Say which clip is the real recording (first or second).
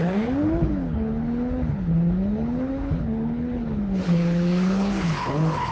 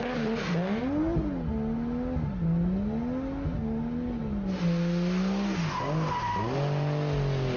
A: second